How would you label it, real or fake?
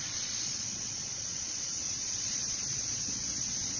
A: fake